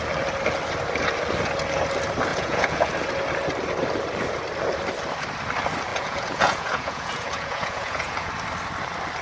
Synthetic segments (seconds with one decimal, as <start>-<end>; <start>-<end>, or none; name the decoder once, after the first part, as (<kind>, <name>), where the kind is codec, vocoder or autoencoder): 2.3-2.9 (vocoder, Vocos); 5.9-8.3